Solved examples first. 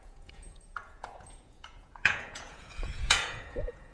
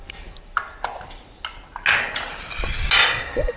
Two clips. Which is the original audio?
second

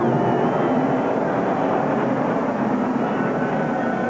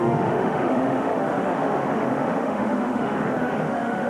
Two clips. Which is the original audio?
first